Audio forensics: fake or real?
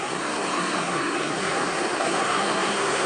fake